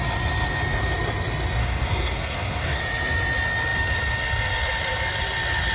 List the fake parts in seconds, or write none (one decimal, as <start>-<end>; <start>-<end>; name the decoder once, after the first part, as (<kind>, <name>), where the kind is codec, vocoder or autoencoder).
1.6-2.8 (codec, SNAC)